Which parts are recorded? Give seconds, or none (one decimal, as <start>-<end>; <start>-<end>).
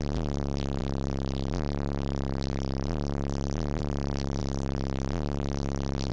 0.0-6.1